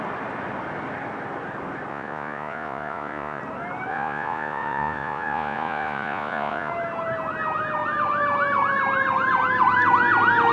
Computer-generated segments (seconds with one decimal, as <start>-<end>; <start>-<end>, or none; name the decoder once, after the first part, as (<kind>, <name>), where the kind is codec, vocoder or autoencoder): 1.9-3.4 (vocoder, Vocos); 3.9-6.7